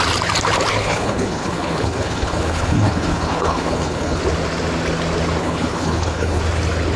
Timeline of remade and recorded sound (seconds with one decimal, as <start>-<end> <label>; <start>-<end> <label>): 0.0-0.8 recorded; 0.8-4.2 remade; 4.2-5.4 recorded; 5.4-6.4 remade; 6.4-7.0 recorded